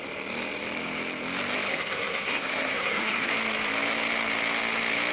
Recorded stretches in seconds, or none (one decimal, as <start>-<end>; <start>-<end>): 0.0-1.7; 3.3-5.1

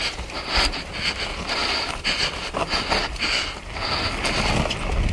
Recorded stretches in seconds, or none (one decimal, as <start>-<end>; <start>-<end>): 0.0-5.1

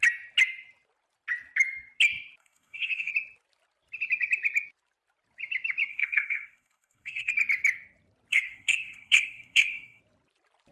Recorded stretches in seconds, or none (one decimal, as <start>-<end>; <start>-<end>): 0.0-2.4; 3.1-5.9; 7.3-8.3; 10.0-10.7

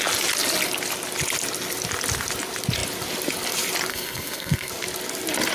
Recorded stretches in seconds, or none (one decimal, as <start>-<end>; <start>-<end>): 0.0-3.9; 4.7-5.5

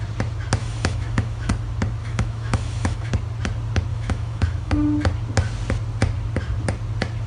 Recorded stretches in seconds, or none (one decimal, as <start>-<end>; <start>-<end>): 0.0-0.6; 1.5-2.0; 3.1-3.9; 4.7-7.3

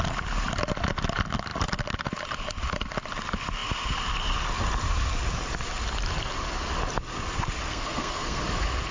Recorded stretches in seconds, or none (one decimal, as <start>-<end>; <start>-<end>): 0.0-7.7; 8.4-8.9

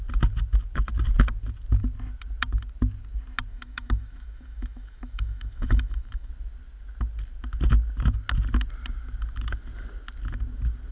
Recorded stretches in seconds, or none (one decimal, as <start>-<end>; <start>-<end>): 0.0-3.5; 6.3-10.9

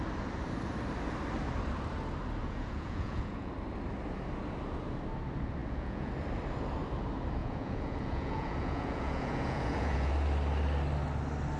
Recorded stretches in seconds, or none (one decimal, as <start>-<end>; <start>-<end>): 0.0-2.4; 3.5-5.6; 6.1-7.4; 10.1-11.6